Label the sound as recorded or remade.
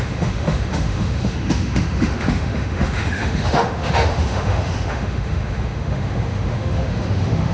remade